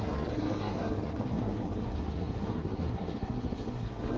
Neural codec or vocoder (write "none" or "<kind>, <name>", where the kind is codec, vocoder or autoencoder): codec, SNAC